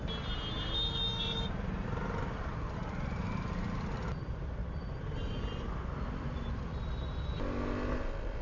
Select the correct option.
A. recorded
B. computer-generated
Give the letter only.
A